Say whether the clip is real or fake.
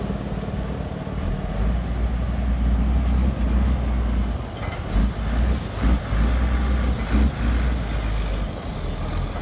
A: real